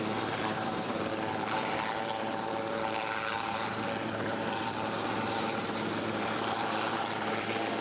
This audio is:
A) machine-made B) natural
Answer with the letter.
A